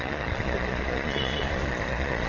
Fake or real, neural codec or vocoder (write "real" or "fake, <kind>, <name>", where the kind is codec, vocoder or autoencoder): fake, vocoder, Vocos